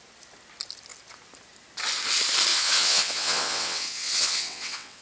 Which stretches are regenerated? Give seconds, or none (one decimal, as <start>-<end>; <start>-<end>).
2.5-5.0